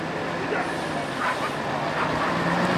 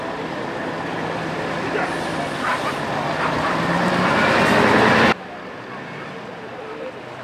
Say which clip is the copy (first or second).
second